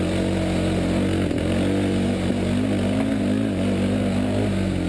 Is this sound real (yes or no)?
yes